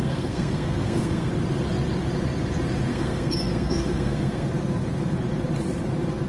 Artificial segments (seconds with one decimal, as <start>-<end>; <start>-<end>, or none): 0.0-1.3; 2.9-4.5